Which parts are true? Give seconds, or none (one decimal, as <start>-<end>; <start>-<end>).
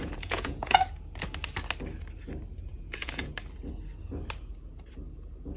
0.8-2.7; 3.3-5.6